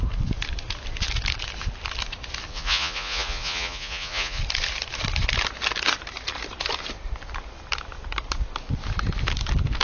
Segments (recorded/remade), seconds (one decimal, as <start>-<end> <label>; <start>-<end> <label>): 0.0-2.5 recorded; 2.5-4.4 remade; 4.4-9.8 recorded